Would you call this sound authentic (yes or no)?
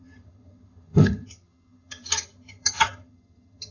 no